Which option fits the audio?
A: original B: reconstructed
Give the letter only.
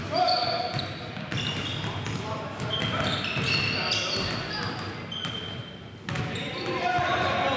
A